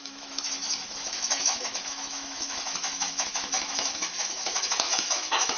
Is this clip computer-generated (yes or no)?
yes